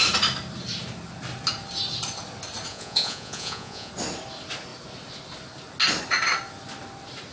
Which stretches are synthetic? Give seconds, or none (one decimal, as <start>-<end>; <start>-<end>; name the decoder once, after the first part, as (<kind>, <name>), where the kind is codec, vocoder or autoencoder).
2.7-3.9 (vocoder, Vocos)